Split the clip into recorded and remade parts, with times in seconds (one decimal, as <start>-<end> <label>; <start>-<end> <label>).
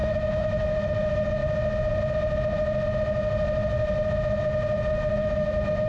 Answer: 0.0-1.4 remade; 1.4-4.9 recorded; 4.9-5.9 remade